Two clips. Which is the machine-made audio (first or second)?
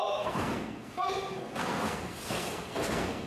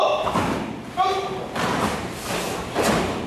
first